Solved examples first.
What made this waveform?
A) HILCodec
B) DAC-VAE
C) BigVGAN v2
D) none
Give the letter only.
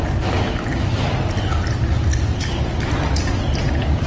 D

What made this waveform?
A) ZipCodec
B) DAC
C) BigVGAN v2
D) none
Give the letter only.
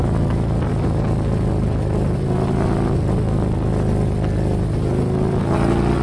D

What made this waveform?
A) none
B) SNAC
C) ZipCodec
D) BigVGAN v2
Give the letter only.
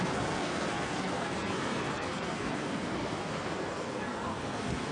B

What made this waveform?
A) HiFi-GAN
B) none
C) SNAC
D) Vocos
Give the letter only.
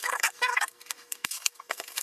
C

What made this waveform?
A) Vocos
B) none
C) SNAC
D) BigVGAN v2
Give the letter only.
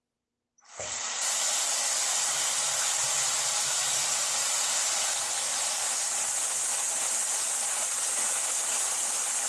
B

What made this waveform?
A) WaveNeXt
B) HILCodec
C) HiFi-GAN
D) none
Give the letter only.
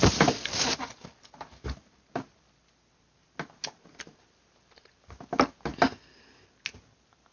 D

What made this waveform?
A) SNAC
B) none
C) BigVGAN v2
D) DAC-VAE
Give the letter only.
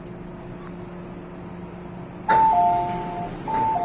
B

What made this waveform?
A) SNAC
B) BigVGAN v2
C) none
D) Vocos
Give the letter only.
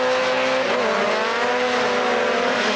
C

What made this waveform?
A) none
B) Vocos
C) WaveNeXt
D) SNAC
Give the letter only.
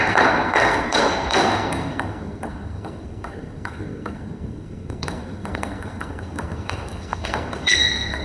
D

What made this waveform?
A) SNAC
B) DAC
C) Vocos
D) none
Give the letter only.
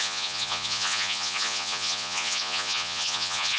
C